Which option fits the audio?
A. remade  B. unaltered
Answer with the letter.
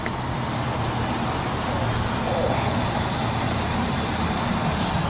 B